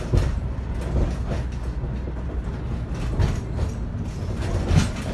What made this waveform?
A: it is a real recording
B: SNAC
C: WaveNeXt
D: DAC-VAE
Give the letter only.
A